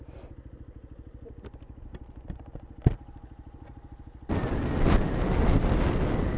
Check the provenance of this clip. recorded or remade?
recorded